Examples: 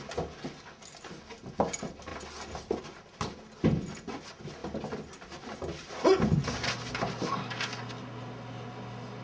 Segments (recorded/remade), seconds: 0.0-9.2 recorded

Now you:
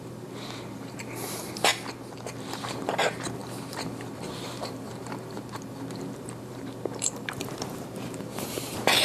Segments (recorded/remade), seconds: 0.0-1.7 remade; 1.7-2.3 recorded; 2.3-9.0 remade